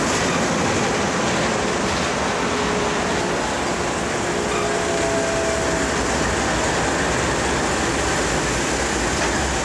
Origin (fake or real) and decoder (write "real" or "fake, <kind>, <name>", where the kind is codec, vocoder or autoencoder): real